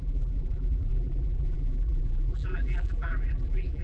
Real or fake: fake